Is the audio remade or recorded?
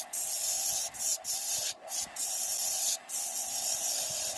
recorded